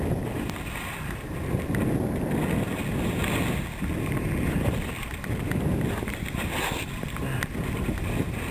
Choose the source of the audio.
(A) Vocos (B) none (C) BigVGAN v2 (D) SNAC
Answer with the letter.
B